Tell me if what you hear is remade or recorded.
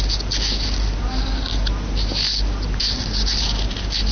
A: recorded